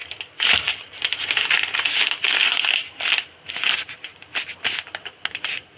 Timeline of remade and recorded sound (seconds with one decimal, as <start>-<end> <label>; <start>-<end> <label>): 0.0-5.8 recorded